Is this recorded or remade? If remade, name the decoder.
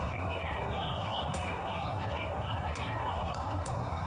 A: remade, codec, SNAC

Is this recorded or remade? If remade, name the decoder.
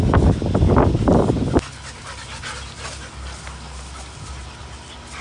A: recorded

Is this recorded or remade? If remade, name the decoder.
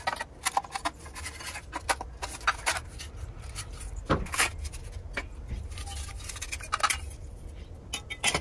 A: recorded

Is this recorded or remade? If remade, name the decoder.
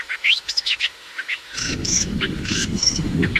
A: remade, autoencoder, DAC-VAE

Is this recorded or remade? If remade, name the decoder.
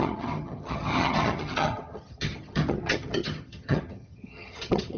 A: remade, vocoder, HiFi-GAN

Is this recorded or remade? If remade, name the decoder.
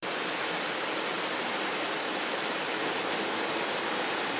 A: recorded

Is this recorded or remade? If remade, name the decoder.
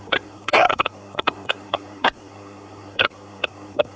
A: remade, codec, SNAC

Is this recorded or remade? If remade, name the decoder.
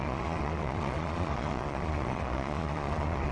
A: remade, vocoder, Vocos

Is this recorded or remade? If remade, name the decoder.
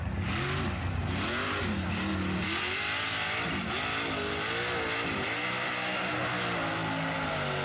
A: recorded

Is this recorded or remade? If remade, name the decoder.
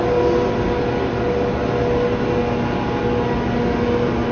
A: recorded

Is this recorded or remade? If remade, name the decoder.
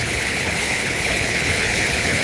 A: remade, codec, HILCodec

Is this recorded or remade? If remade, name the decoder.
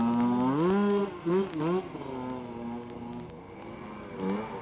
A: recorded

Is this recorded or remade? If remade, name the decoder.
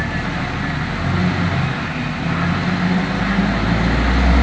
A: recorded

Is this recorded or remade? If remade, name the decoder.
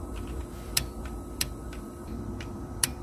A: remade, vocoder, BigVGAN v2